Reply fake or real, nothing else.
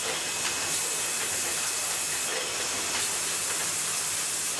real